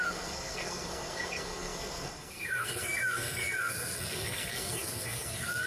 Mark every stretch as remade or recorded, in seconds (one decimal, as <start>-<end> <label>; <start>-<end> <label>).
0.0-5.7 remade